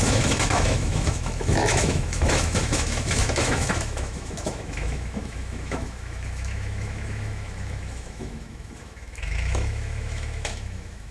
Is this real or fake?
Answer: fake